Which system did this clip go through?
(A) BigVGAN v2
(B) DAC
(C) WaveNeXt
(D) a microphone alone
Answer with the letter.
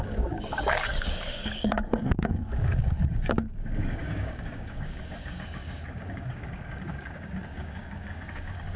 B